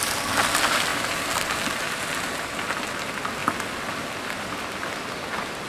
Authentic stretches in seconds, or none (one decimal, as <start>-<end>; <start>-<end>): 0.0-5.7